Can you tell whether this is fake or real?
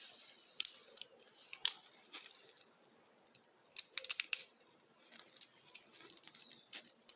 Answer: fake